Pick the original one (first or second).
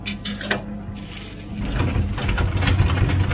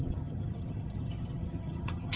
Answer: first